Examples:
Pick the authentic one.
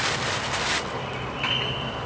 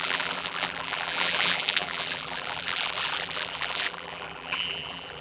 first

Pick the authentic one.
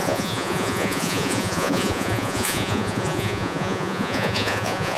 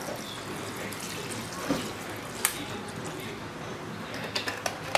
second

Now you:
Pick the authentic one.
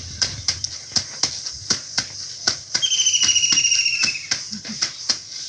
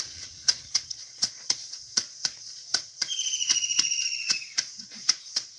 first